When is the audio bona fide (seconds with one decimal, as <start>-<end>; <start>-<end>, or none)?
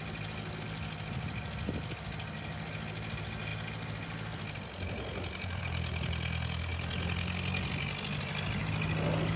0.0-9.4